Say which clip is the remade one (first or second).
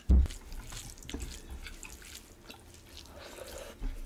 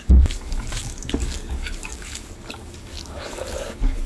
second